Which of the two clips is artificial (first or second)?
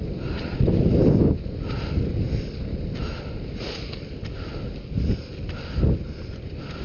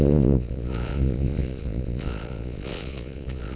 second